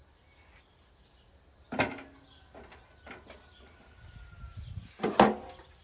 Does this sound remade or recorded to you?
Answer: recorded